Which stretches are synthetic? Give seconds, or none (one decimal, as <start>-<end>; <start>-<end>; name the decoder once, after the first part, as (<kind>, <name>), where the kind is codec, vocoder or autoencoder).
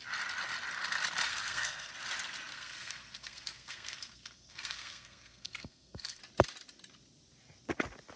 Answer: 1.3-1.9 (codec, SNAC); 2.5-6.2